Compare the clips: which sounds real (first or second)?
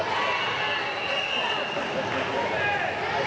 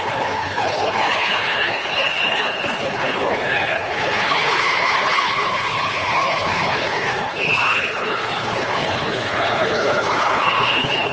first